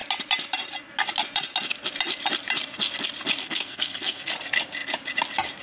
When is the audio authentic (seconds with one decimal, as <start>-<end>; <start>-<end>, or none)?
0.0-3.4; 4.3-5.6